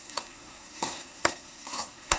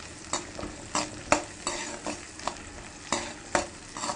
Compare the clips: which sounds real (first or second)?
second